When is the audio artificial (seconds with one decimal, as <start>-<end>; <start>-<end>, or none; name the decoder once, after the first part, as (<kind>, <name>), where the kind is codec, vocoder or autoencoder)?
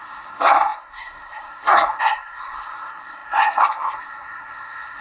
0.0-5.0 (codec, SNAC)